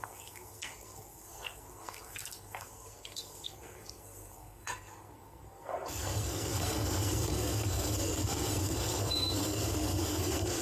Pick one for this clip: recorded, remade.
remade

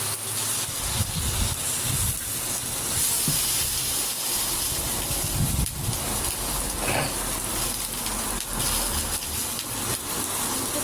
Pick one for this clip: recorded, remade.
recorded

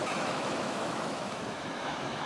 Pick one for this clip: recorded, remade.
remade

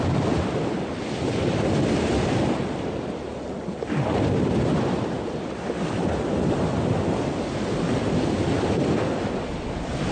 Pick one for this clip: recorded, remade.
recorded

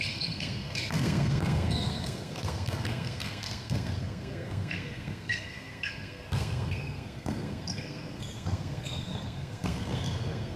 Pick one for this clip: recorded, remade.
remade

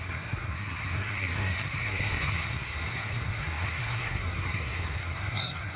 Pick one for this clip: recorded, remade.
remade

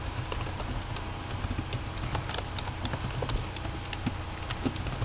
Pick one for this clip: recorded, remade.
recorded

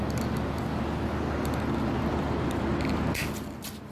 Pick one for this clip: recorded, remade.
recorded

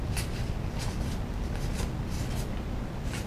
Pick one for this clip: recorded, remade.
recorded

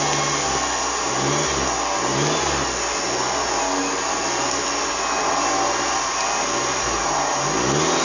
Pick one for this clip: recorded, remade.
recorded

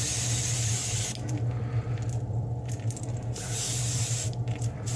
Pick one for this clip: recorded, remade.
recorded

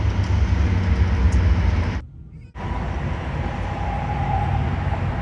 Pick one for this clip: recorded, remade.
recorded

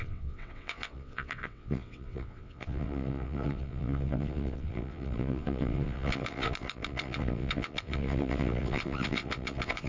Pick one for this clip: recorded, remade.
remade